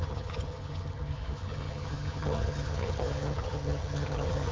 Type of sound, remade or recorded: remade